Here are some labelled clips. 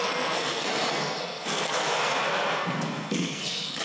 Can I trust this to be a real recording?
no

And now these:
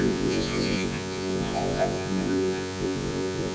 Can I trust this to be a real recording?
no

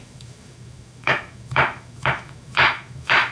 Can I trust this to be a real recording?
no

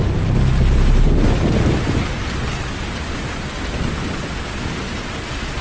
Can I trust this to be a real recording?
yes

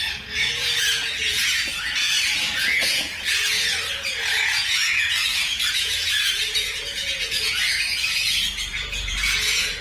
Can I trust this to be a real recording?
no